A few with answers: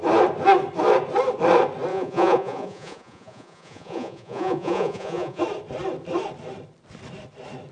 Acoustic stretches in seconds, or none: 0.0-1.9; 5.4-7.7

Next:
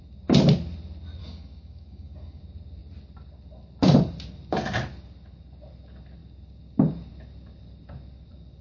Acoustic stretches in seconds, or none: 0.0-1.2; 2.4-8.6

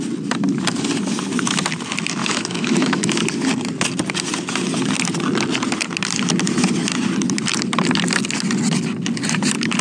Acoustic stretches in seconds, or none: 0.0-2.2; 3.2-9.8

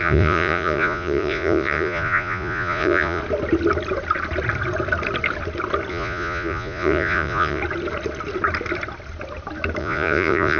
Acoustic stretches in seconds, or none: 3.2-5.9; 7.6-9.8